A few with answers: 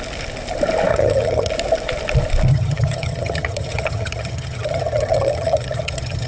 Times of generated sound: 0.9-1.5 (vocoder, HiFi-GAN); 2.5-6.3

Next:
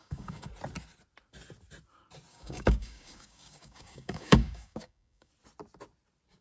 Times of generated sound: 0.0-0.5 (codec, DAC); 2.3-5.3

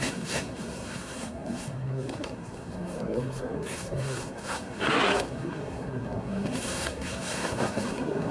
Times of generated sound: 0.0-8.3 (codec, SNAC)

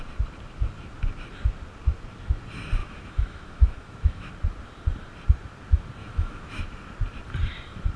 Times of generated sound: 2.8-4.3 (autoencoder, DAC-VAE); 6.0-6.6

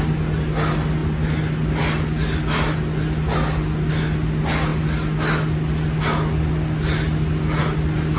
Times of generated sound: none

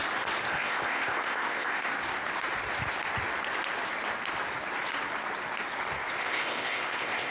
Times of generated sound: 0.5-1.9 (codec, ZipCodec); 6.2-7.3

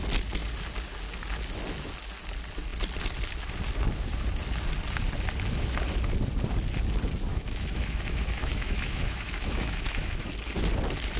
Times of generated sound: 7.3-10.3 (autoencoder, DAC-VAE)

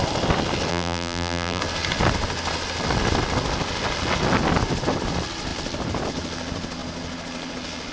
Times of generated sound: 0.7-1.6 (vocoder, BigVGAN v2)